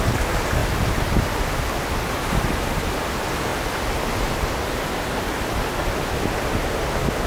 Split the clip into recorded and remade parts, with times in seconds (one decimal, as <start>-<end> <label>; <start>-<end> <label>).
0.0-7.3 recorded